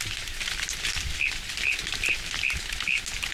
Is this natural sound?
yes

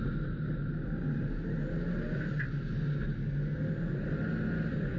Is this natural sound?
yes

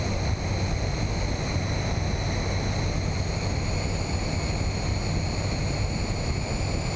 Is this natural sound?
yes